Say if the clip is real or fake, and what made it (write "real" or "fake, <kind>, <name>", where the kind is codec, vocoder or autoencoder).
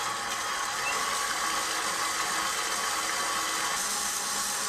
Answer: real